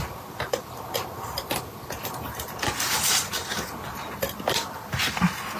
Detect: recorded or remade recorded